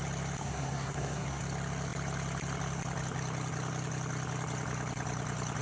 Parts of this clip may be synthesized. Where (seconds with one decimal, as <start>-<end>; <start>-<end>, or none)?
0.4-1.4